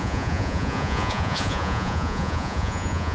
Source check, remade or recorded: remade